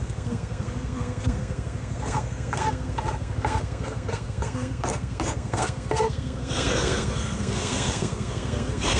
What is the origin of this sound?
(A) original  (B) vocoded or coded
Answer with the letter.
B